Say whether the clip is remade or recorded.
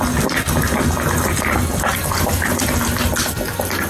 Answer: remade